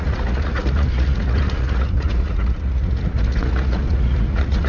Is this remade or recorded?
remade